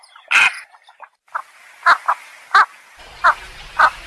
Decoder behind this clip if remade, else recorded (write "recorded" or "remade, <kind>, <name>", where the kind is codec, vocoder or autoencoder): recorded